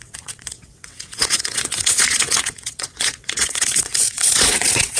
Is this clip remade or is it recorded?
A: remade